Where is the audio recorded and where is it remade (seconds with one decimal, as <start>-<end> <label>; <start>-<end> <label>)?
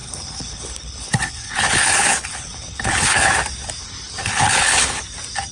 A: 0.0-3.3 remade; 3.3-3.8 recorded; 3.8-5.0 remade; 5.0-5.5 recorded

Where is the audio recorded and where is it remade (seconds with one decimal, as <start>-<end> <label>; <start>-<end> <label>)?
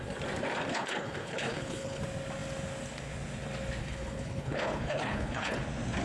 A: 0.0-0.7 recorded; 0.7-2.0 remade; 2.0-3.8 recorded; 3.8-5.6 remade; 5.6-6.0 recorded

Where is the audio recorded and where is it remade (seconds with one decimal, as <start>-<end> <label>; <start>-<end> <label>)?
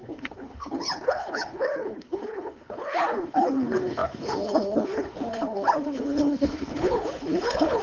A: 0.0-7.8 remade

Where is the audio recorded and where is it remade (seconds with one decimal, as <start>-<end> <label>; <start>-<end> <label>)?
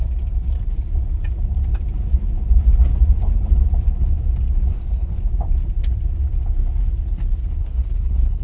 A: 0.0-4.7 recorded; 4.7-5.2 remade; 5.2-7.6 recorded; 7.6-8.4 remade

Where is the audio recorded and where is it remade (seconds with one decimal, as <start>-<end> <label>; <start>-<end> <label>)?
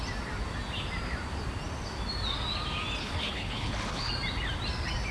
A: 0.0-3.0 recorded; 3.0-4.1 remade; 4.1-5.1 recorded